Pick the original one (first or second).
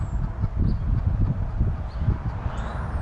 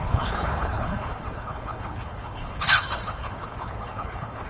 first